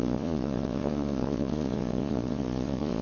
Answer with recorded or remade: remade